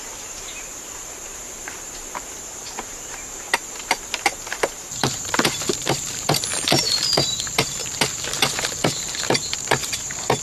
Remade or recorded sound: remade